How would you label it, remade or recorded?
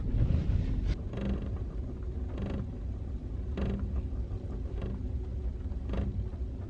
recorded